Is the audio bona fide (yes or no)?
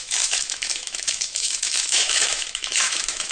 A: no